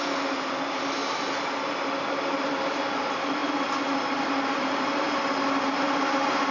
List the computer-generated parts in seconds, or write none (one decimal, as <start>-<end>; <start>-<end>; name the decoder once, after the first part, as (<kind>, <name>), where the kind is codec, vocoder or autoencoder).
none